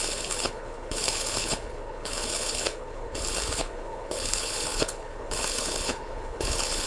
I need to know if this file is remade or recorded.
remade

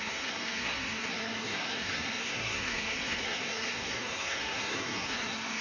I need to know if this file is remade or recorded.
remade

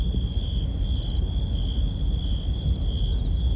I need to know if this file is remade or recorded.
recorded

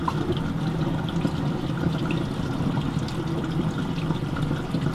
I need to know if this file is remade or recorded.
recorded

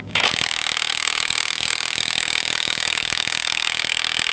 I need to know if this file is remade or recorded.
remade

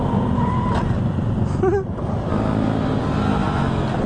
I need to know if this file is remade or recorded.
recorded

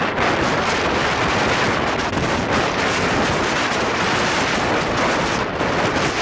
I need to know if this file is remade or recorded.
recorded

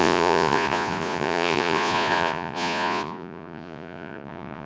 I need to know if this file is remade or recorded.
remade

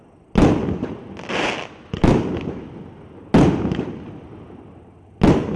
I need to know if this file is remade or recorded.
recorded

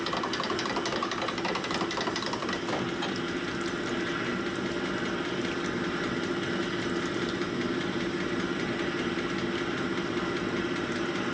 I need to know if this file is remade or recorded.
recorded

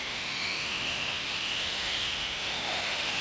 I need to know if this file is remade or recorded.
remade